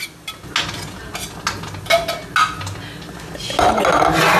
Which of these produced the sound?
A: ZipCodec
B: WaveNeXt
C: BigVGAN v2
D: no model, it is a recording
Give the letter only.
D